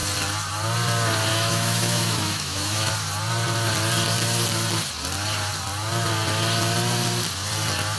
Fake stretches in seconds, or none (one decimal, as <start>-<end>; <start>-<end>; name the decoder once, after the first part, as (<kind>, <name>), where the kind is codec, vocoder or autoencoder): 1.3-2.9 (autoencoder, DAC-VAE)